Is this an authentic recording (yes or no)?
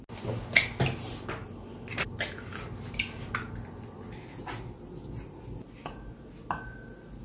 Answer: yes